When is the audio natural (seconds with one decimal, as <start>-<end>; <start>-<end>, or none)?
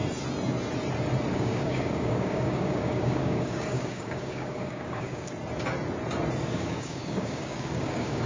0.0-1.3; 5.3-6.4